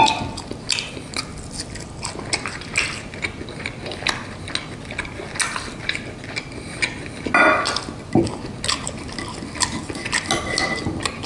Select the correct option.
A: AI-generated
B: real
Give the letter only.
B